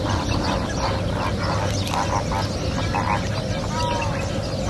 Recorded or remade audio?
recorded